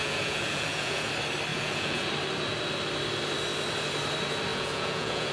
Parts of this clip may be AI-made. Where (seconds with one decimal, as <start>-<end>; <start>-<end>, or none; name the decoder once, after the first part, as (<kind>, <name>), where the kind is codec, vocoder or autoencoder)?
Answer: 0.0-1.1 (vocoder, Vocos); 1.5-2.1; 4.5-5.3